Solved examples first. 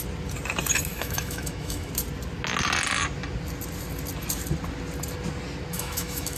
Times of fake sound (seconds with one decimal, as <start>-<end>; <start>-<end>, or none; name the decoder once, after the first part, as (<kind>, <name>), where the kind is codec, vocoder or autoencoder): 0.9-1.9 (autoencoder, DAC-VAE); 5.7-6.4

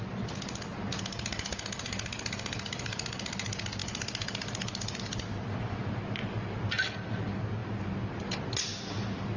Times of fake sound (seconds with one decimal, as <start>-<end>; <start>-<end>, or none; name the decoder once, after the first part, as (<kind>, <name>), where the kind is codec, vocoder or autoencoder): none

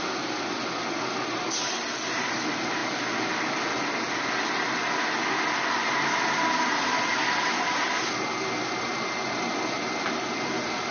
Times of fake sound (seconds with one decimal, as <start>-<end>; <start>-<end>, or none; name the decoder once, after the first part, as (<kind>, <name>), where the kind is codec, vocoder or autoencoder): none

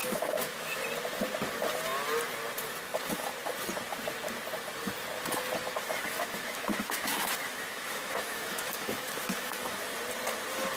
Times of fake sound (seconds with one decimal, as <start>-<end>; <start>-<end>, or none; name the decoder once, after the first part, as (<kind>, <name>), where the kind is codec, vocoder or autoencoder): 0.0-0.8 (autoencoder, DAC-VAE); 6.0-9.8

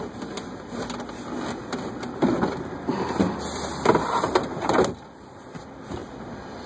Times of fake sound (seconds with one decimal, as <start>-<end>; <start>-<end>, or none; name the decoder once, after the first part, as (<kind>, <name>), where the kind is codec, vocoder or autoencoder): 1.6-5.6 (vocoder, BigVGAN v2); 6.0-6.7